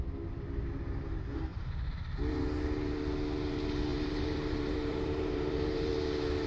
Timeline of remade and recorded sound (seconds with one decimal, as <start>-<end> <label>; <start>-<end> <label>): 0.0-3.9 recorded; 3.9-5.9 remade; 5.9-6.5 recorded